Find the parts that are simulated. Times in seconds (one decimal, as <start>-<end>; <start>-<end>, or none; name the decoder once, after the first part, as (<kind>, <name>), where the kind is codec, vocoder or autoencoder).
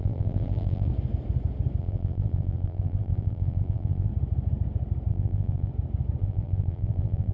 0.0-0.9 (vocoder, BigVGAN v2); 1.8-4.1; 5.1-5.7; 6.2-7.3